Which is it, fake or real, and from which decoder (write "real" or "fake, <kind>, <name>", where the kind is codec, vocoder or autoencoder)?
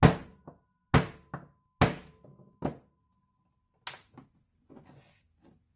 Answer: real